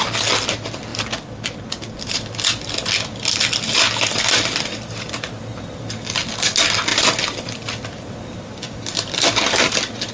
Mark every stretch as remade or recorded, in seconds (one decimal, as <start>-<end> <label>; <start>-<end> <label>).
0.0-10.1 recorded